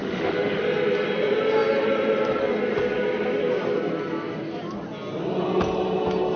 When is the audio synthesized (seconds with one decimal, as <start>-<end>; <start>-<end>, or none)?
0.0-0.6